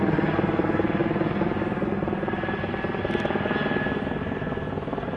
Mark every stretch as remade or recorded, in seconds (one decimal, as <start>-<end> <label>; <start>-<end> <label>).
0.0-5.2 recorded